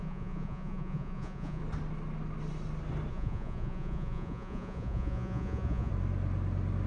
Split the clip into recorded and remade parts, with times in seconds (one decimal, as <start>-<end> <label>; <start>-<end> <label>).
0.0-1.6 remade; 1.6-3.1 recorded; 3.1-5.9 remade; 5.9-6.9 recorded